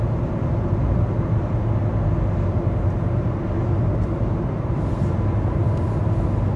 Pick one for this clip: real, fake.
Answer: real